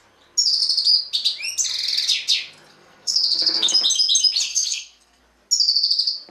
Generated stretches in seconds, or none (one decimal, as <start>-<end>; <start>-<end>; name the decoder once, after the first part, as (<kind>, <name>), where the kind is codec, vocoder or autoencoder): 2.7-3.7 (codec, SNAC); 4.5-5.2